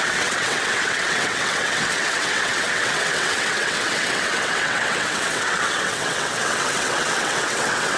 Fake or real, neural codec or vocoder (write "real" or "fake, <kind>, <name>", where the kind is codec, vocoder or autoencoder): fake, vocoder, WaveNeXt